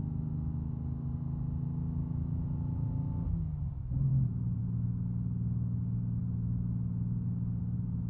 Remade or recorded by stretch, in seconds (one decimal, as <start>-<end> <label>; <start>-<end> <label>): 0.0-8.1 recorded